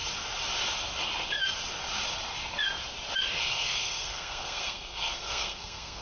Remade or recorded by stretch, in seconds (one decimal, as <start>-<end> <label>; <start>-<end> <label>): 0.0-3.4 recorded; 3.4-6.0 remade